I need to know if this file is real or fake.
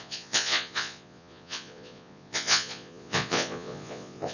fake